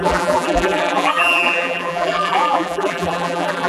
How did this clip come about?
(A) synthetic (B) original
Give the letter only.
A